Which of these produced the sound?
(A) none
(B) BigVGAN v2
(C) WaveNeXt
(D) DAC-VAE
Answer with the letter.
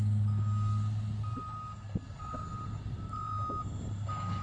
A